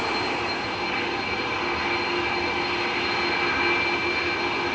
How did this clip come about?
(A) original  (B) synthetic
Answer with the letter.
A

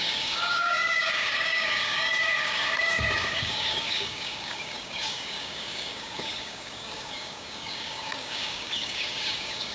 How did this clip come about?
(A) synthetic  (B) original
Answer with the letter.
A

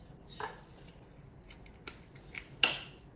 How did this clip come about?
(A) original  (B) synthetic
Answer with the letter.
A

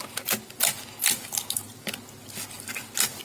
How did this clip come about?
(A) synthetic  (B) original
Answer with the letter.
B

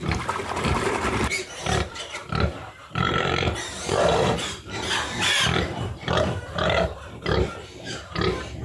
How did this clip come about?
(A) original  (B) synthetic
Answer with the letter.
B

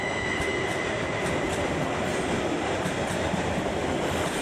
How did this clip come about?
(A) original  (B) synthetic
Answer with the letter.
A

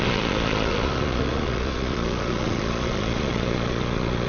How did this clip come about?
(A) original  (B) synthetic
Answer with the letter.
B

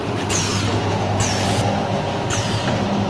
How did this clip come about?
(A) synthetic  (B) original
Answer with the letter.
B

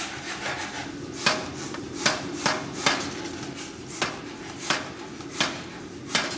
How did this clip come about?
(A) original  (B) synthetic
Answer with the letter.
A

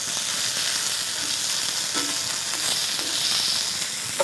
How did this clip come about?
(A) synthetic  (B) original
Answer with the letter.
B